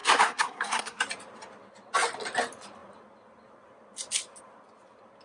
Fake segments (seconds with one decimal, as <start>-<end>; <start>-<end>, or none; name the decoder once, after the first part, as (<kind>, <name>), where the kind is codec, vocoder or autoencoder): 0.0-1.0 (codec, SNAC)